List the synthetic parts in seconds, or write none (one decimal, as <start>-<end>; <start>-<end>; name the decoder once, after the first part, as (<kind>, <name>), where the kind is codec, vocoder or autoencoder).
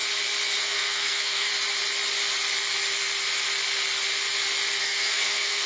0.6-1.5 (codec, SNAC); 4.8-5.7